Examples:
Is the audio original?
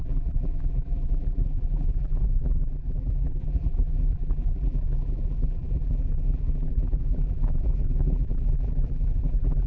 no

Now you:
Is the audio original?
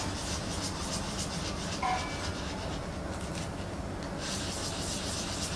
yes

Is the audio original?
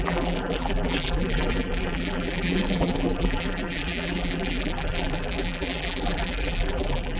no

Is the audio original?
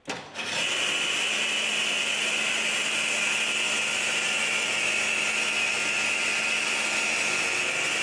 yes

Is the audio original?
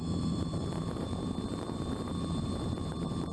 no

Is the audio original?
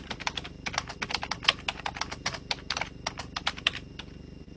yes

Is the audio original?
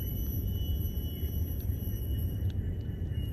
no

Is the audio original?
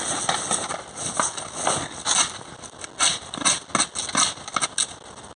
yes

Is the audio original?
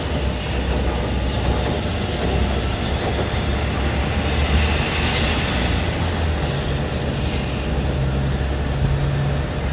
yes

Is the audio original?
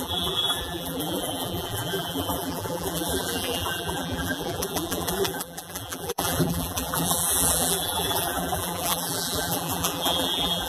no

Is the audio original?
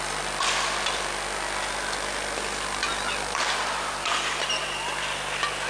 yes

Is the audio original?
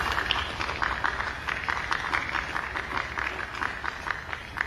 yes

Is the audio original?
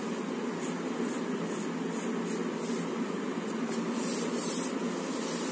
yes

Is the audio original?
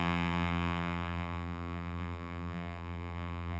no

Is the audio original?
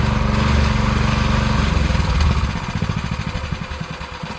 yes